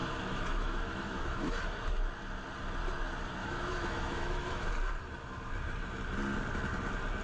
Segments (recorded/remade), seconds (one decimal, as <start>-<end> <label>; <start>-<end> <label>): 0.0-1.5 remade; 1.5-3.4 recorded; 3.4-4.7 remade; 4.7-7.2 recorded